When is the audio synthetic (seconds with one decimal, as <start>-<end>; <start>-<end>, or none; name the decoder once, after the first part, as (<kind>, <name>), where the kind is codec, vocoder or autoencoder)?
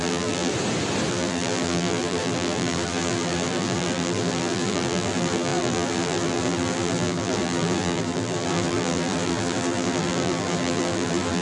0.0-0.5 (vocoder, BigVGAN v2); 1.1-11.4